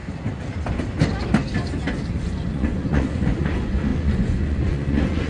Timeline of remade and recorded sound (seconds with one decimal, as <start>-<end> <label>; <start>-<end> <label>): 0.0-2.2 recorded; 2.2-5.3 remade